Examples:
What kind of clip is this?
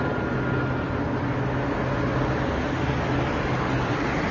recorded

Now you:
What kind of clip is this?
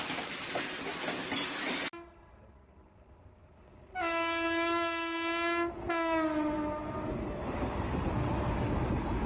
recorded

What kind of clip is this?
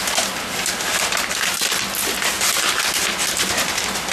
recorded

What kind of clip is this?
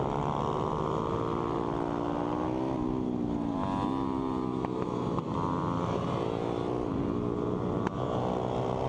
recorded